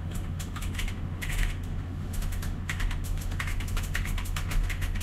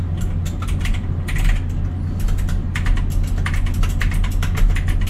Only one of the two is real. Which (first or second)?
second